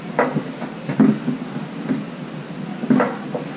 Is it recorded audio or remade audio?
recorded